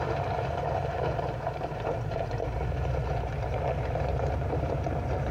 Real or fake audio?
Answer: fake